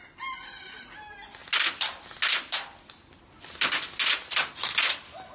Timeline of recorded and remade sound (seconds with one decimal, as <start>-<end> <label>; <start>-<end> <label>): 0.0-5.3 recorded